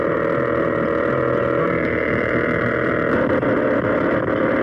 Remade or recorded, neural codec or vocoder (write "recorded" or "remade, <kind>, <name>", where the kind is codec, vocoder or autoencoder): remade, vocoder, BigVGAN v2